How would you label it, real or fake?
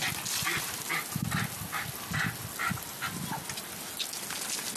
real